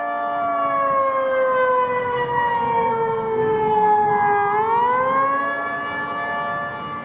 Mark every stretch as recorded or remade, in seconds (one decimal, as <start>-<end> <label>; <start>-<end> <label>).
0.0-2.0 recorded; 2.0-4.1 remade; 4.1-7.0 recorded